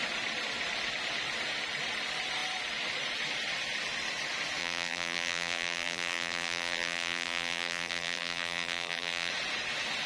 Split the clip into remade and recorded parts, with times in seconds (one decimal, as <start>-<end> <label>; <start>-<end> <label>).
0.0-4.6 recorded; 4.6-9.3 remade; 9.3-10.1 recorded